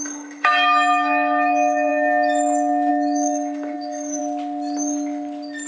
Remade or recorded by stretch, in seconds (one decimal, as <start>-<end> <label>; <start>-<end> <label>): 0.0-1.9 remade; 1.9-2.9 recorded; 2.9-4.2 remade; 4.2-5.7 recorded